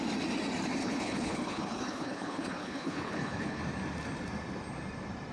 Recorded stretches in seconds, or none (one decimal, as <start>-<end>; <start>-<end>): 0.0-0.8; 3.6-5.3